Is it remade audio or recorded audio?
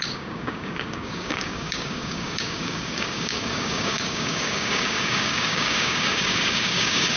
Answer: remade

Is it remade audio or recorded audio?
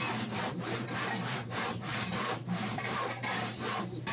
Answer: remade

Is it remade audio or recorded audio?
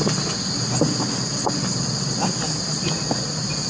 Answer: recorded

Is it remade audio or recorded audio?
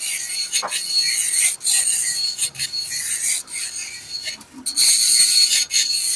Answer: recorded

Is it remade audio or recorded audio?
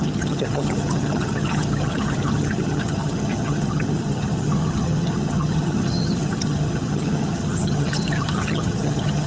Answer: remade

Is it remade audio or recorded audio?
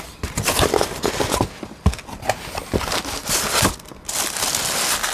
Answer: recorded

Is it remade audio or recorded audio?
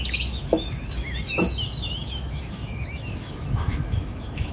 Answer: remade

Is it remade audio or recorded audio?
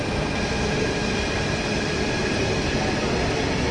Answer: recorded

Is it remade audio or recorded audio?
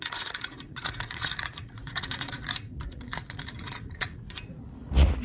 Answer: remade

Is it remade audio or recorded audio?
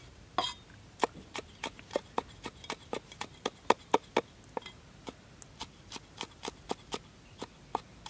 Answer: recorded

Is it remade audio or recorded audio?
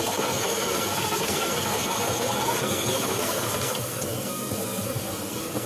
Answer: remade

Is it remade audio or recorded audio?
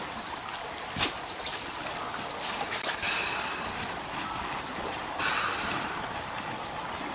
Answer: recorded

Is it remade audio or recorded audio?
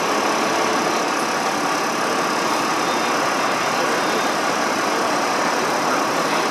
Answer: recorded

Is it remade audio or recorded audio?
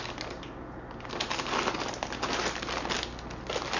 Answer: recorded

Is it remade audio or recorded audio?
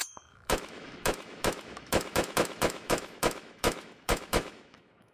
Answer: remade